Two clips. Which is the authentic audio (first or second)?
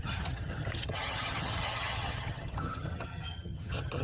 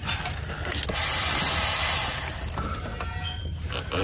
second